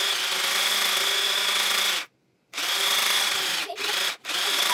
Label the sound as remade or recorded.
recorded